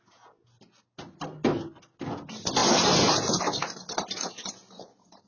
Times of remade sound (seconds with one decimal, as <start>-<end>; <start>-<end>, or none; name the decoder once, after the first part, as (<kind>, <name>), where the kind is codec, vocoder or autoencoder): none

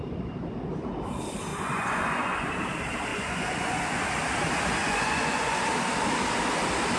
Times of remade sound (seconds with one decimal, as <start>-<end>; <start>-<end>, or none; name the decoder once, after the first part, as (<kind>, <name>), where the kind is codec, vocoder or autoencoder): 1.5-2.5 (vocoder, Vocos); 3.1-4.0; 4.8-5.6

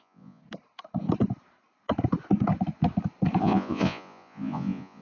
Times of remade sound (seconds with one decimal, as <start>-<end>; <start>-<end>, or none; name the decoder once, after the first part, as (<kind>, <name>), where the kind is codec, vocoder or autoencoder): 0.0-0.4 (vocoder, Vocos); 3.4-5.0